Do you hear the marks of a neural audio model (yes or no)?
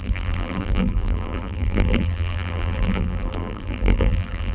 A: yes